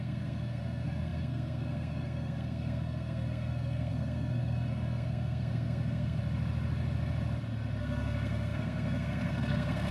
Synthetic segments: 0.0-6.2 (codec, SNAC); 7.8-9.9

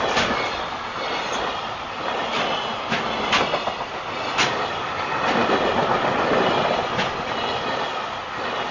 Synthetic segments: none

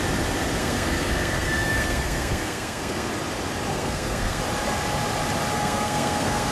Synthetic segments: 0.6-3.1 (codec, SNAC); 3.7-4.4; 5.5-6.5

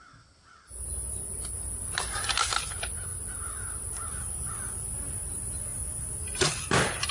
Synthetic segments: none